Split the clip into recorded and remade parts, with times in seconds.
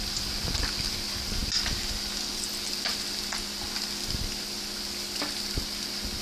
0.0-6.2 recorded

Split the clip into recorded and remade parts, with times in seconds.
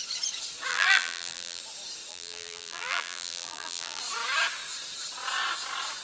0.0-0.7 recorded; 0.7-1.6 remade; 1.6-2.1 recorded; 2.1-4.0 remade; 4.0-6.0 recorded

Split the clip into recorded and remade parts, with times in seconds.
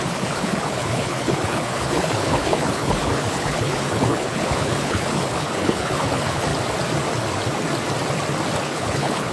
0.0-6.5 remade; 6.5-8.6 recorded; 8.6-9.3 remade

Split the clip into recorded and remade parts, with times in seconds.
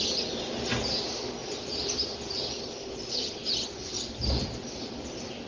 0.0-5.5 recorded